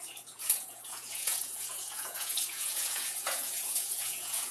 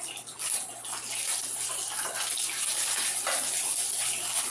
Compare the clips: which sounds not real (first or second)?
first